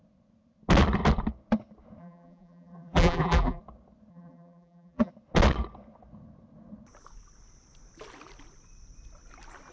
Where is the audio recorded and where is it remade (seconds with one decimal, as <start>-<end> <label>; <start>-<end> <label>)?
0.0-2.0 recorded; 2.0-3.6 remade; 3.6-4.1 recorded; 4.1-5.1 remade; 5.1-9.7 recorded

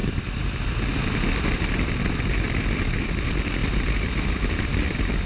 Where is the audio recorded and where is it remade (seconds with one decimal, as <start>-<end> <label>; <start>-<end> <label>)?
0.0-3.2 recorded; 3.2-5.3 remade

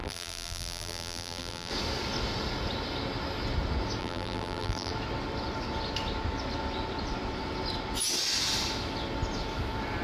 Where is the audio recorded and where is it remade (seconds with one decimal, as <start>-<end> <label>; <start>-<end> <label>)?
0.0-1.7 remade; 1.7-4.0 recorded; 4.0-4.9 remade; 4.9-10.0 recorded

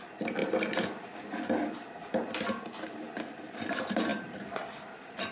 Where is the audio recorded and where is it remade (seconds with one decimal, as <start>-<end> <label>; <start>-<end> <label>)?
0.0-4.1 recorded; 4.1-5.3 remade

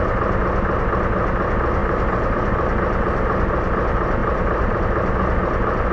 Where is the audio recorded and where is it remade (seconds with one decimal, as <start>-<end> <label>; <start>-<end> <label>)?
0.0-1.8 recorded; 1.8-2.4 remade; 2.4-4.2 recorded; 4.2-4.8 remade; 4.8-5.9 recorded

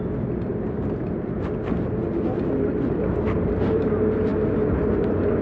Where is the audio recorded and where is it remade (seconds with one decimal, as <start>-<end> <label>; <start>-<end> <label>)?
0.0-5.4 recorded

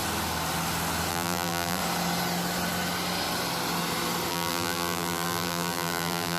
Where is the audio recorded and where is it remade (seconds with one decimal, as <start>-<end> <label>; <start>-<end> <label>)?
0.0-1.1 recorded; 1.1-1.8 remade; 1.8-4.3 recorded; 4.3-6.4 remade